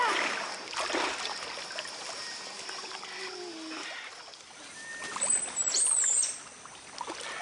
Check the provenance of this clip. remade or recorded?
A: recorded